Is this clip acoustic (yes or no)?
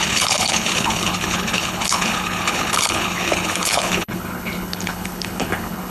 no